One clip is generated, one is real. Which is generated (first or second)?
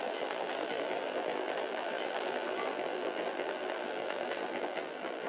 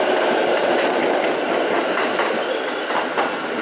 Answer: first